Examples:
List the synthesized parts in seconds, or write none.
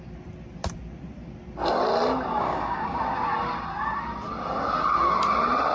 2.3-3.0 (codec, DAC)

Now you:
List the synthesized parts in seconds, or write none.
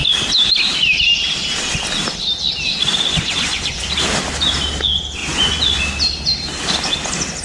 3.1-3.9 (vocoder, Vocos); 5.2-5.8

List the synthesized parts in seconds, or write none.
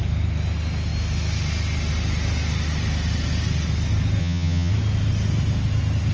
4.2-4.7 (vocoder, HiFi-GAN)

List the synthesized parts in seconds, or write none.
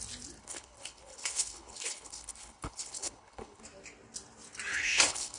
0.4-3.6 (codec, HILCodec); 4.7-5.4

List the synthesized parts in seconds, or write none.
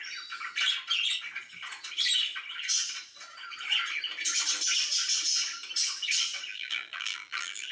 6.5-7.7 (vocoder, BigVGAN v2)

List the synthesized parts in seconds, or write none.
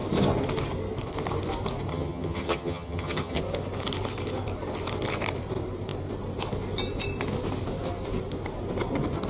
1.9-3.4 (vocoder, HiFi-GAN)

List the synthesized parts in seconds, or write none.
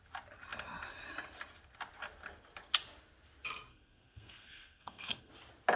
3.7-5.3 (codec, SNAC)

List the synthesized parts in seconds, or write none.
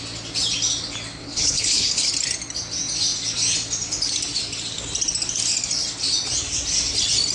1.2-2.1 (codec, HILCodec)